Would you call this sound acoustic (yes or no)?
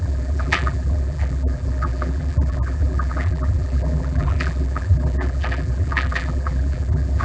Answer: no